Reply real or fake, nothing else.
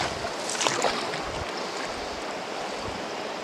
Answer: real